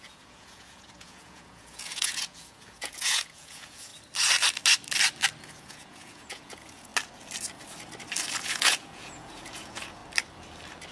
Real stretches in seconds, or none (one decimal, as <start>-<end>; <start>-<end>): 3.9-5.4; 6.9-8.4; 10.0-10.9